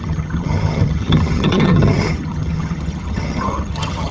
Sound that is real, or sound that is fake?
fake